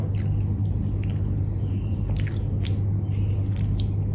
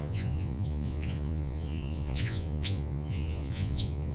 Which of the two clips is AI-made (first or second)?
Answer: second